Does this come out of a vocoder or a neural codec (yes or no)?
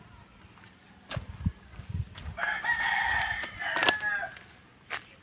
no